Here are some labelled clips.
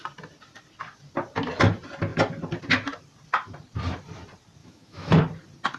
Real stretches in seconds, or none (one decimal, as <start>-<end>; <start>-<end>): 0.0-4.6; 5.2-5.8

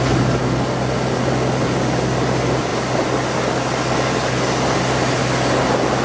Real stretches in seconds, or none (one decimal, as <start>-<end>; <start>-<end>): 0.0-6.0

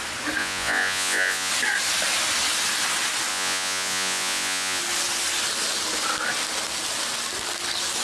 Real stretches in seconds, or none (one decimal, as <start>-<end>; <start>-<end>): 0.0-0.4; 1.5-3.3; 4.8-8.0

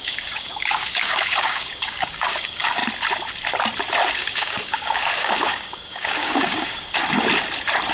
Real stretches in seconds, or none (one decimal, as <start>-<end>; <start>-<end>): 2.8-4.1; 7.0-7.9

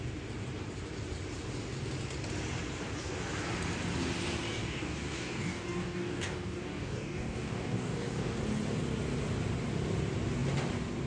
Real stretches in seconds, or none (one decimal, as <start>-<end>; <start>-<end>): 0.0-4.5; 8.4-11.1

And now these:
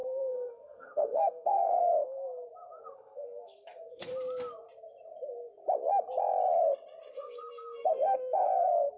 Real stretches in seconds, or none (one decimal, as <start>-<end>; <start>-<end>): 1.9-2.8; 4.1-7.1